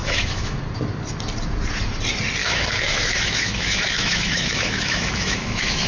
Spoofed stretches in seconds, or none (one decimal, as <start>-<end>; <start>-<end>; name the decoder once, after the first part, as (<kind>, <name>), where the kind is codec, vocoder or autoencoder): 0.0-0.6 (autoencoder, DAC-VAE); 2.4-5.9